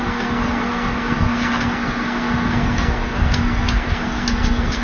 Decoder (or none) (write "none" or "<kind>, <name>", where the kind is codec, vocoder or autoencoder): codec, SNAC